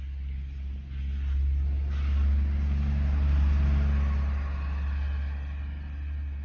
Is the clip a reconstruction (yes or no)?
no